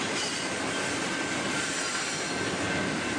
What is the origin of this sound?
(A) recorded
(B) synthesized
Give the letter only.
A